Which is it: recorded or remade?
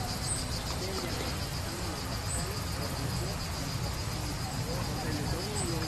recorded